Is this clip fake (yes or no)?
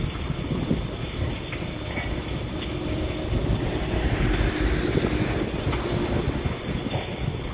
no